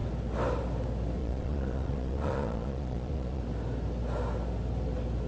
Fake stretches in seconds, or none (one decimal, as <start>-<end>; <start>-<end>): 1.2-3.4